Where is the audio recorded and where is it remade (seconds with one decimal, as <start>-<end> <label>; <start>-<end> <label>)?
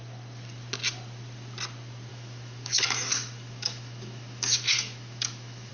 0.0-2.1 recorded; 2.1-5.7 remade